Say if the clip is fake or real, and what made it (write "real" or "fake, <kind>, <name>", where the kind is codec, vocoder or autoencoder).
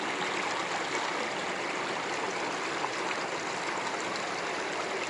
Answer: real